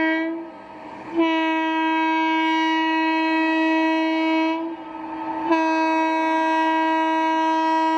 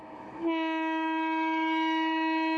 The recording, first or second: first